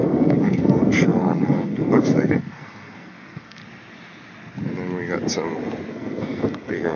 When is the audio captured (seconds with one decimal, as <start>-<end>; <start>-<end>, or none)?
3.6-5.9